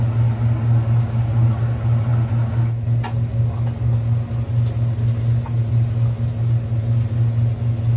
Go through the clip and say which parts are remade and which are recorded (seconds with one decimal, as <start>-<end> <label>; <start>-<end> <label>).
0.0-8.0 recorded